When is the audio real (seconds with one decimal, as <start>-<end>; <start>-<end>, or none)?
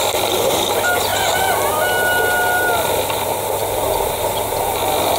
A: 0.0-5.2